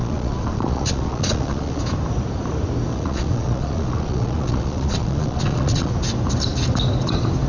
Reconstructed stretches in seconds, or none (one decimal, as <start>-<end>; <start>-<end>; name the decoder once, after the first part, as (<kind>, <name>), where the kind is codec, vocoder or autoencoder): 0.0-1.8 (vocoder, Vocos); 2.9-5.9